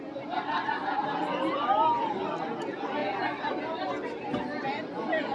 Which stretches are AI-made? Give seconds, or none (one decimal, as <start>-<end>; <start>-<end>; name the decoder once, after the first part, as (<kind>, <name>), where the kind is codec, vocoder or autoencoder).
none